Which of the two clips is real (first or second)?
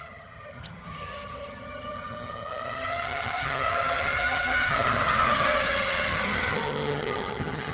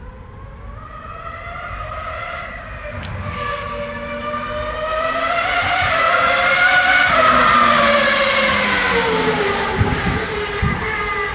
second